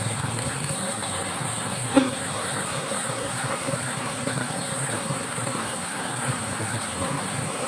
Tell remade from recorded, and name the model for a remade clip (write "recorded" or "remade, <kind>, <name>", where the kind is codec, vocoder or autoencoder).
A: remade, codec, SNAC